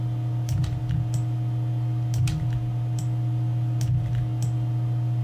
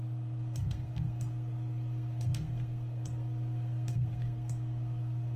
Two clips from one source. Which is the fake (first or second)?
second